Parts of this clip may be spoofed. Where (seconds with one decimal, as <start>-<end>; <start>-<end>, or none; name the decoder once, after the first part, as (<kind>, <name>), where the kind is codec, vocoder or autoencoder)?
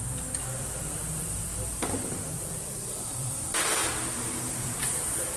0.0-5.4 (vocoder, BigVGAN v2)